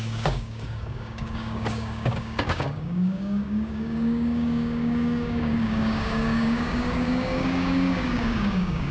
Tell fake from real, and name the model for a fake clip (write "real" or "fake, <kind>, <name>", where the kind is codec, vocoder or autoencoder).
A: fake, codec, DAC